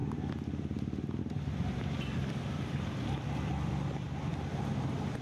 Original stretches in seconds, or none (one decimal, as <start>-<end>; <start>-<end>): 0.0-1.2; 4.3-5.2